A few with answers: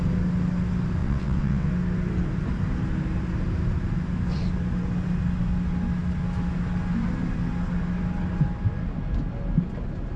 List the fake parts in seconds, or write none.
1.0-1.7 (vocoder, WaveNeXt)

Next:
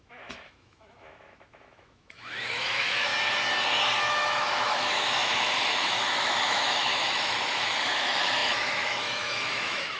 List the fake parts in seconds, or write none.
0.0-3.1 (autoencoder, DAC-VAE); 4.0-10.0